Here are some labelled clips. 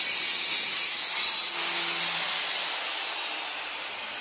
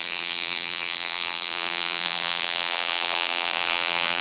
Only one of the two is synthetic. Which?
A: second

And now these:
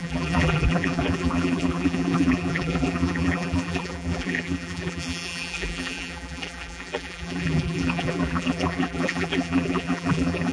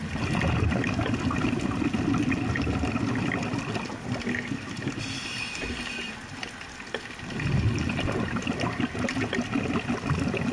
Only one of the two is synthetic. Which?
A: first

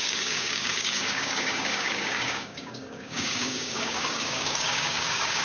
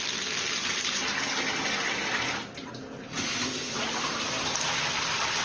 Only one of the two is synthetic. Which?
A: first